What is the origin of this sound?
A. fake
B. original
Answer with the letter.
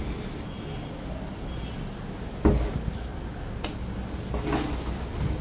B